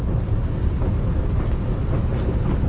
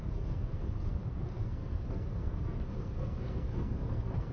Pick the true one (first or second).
first